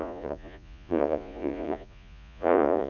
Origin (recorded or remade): remade